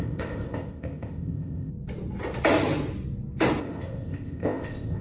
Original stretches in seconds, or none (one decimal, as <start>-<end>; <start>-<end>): 1.7-3.6